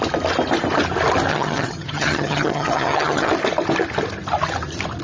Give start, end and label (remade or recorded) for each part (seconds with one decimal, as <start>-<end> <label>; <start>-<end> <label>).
0.0-1.3 recorded; 1.3-3.3 remade; 3.3-5.0 recorded